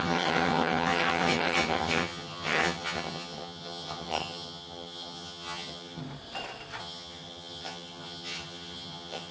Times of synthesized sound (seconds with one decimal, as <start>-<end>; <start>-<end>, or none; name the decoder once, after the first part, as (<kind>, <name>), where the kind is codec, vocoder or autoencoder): 0.0-6.0 (vocoder, HiFi-GAN); 6.8-9.3